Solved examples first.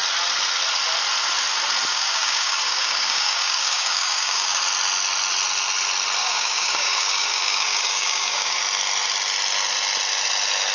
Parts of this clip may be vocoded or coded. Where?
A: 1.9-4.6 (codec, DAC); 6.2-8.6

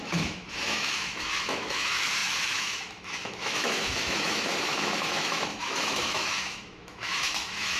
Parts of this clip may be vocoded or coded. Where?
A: 0.0-7.8 (autoencoder, DAC-VAE)

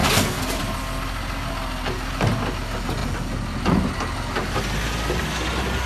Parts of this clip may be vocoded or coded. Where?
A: 0.0-0.6 (codec, SNAC)